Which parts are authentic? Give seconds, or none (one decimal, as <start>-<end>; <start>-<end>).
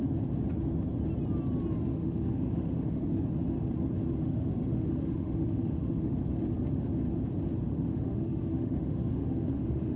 0.0-1.9; 3.2-4.2; 6.1-7.7